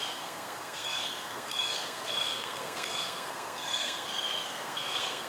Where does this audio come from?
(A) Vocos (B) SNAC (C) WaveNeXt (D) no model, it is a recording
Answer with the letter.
B